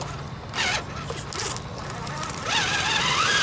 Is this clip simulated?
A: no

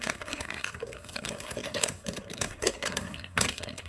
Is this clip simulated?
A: yes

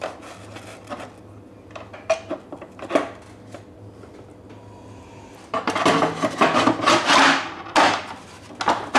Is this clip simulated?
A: no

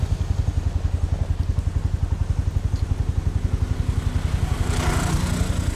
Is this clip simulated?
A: no